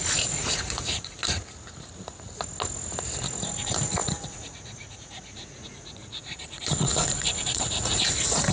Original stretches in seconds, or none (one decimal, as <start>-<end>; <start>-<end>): 1.2-3.6